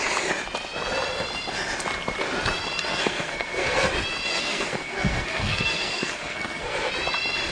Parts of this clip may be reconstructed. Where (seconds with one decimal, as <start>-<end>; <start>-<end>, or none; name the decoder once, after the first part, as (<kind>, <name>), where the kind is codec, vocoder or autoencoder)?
2.9-3.9 (codec, SNAC); 4.3-6.9